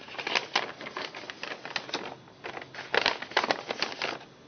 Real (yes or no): yes